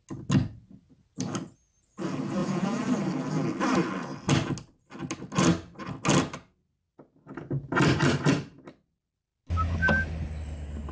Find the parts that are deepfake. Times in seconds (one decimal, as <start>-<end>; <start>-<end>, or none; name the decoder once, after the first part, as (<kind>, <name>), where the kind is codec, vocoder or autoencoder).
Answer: 2.4-2.9 (vocoder, Vocos)